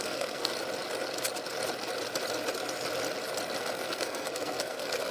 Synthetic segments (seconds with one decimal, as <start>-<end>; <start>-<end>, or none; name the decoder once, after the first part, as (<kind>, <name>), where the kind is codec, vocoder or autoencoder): 0.0-0.5 (codec, SNAC); 3.6-5.1